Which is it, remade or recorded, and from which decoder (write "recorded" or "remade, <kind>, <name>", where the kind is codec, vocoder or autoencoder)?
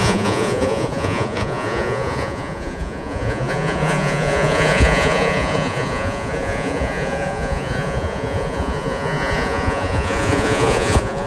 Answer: remade, vocoder, Vocos